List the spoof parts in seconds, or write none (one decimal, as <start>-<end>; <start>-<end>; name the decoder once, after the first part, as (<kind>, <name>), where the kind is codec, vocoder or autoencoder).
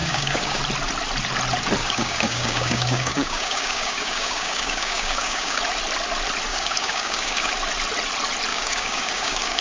0.0-0.6 (codec, DAC); 1.8-5.6; 6.5-7.5; 8.5-9.6